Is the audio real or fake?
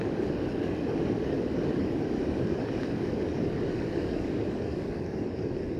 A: fake